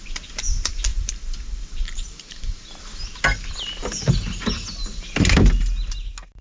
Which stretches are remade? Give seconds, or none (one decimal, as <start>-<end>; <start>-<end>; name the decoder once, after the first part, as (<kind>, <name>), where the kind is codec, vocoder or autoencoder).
0.9-2.8 (vocoder, BigVGAN v2)